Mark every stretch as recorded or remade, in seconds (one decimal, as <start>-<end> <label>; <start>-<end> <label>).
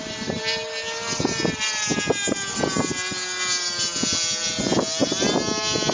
0.0-5.9 recorded